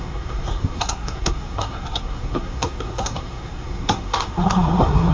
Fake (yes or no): yes